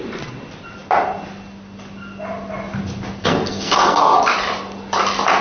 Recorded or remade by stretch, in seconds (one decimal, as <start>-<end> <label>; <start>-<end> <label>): 0.0-3.2 recorded; 3.2-4.3 remade; 4.3-5.4 recorded